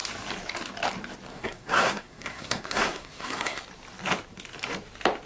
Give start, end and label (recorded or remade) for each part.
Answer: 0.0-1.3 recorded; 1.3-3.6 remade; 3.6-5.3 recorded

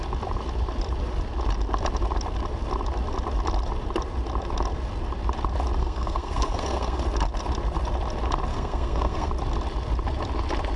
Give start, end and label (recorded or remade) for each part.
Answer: 0.0-5.8 recorded; 5.8-7.0 remade; 7.0-8.5 recorded; 8.5-9.3 remade; 9.3-10.8 recorded

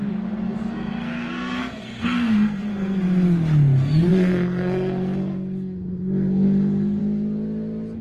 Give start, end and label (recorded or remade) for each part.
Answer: 0.0-0.6 recorded; 0.6-3.0 remade; 3.0-4.1 recorded; 4.1-7.0 remade; 7.0-8.0 recorded

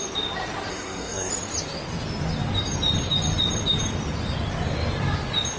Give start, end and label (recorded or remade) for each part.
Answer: 0.0-0.7 recorded; 0.7-1.3 remade; 1.3-5.6 recorded